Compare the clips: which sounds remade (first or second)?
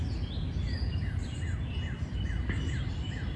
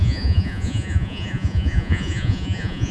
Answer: second